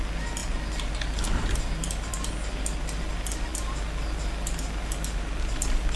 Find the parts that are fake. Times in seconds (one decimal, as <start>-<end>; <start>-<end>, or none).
none